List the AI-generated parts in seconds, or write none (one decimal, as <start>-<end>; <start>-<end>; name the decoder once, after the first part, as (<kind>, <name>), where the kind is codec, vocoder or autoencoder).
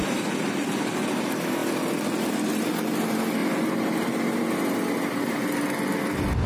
none